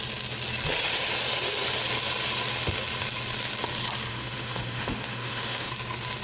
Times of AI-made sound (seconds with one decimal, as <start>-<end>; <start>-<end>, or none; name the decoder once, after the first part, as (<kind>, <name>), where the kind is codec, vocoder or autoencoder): 4.1-5.7 (autoencoder, DAC-VAE)